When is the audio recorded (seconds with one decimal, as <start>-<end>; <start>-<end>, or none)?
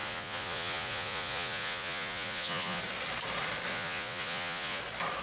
2.8-3.7; 4.8-5.2